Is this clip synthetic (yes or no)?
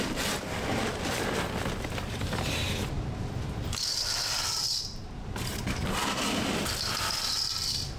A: yes